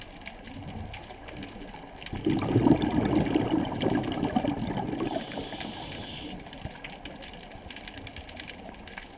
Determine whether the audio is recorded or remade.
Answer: recorded